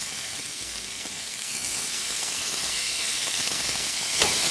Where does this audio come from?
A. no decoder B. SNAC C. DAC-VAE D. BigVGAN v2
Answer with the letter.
B